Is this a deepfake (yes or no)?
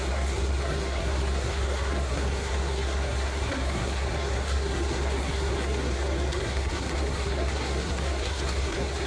yes